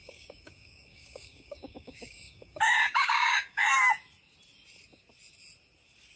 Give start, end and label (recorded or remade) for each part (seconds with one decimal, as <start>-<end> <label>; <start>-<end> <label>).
0.0-3.7 remade; 3.7-6.2 recorded